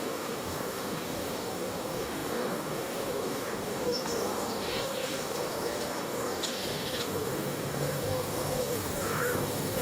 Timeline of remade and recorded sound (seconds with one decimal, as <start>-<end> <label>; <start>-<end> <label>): 0.0-9.8 remade